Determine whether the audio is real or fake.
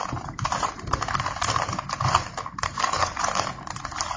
fake